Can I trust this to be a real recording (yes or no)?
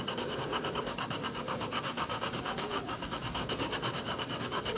no